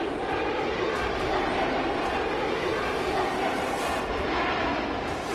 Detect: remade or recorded recorded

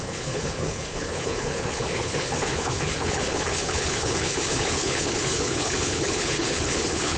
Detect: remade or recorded remade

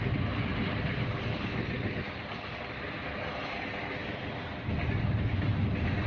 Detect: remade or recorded recorded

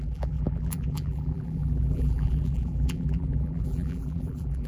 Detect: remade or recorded remade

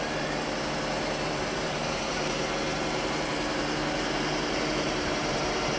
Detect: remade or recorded remade